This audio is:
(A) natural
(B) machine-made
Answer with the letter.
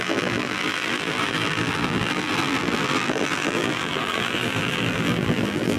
B